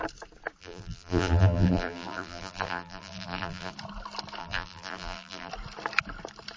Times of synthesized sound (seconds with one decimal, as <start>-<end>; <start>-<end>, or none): 0.6-3.7; 4.4-5.5

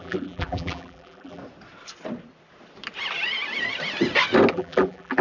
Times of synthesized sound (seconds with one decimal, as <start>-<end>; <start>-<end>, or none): 0.0-1.4; 4.5-5.2

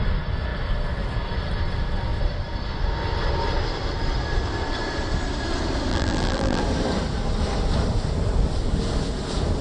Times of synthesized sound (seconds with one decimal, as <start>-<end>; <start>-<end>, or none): 5.9-6.6

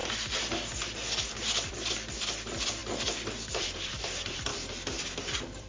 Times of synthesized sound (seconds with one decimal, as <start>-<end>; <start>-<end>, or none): 0.0-2.8; 3.6-4.5; 5.1-5.7

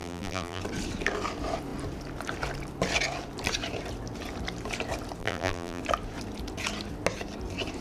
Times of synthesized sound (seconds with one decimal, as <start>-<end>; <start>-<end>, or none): 0.0-0.6; 5.2-5.8

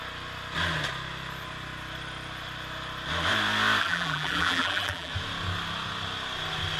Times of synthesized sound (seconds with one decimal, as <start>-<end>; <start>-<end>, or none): 3.8-5.1

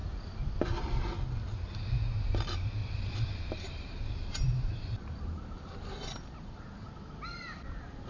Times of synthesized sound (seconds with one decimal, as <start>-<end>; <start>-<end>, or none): 2.8-6.9